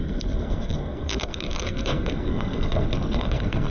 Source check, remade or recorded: remade